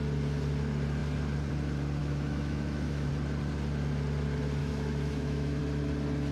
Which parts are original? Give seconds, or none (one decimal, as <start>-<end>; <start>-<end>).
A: 0.0-2.0; 3.1-4.6; 5.6-6.3